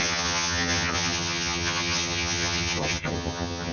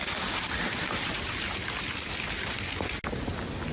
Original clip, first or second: second